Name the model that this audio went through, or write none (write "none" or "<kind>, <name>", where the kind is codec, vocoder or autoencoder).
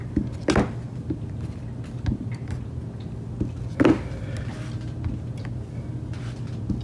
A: none